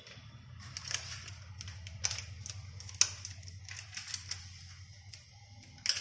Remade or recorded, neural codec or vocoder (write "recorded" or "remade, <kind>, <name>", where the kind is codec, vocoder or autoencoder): recorded